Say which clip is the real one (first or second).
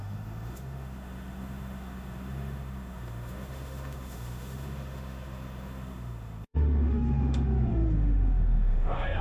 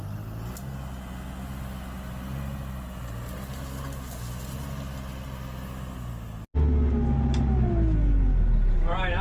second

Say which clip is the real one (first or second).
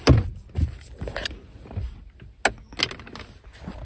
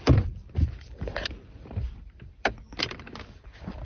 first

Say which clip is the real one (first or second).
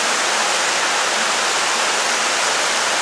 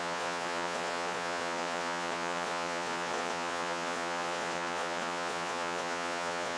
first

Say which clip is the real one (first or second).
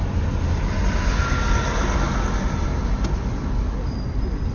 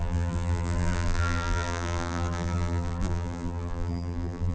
first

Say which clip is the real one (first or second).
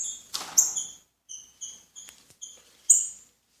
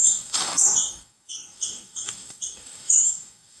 first